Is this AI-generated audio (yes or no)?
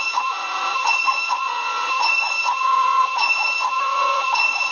yes